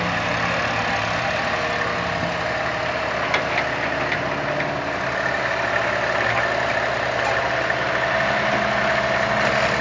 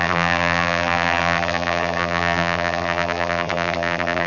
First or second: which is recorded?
first